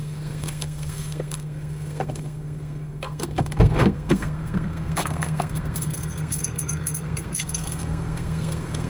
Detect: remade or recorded remade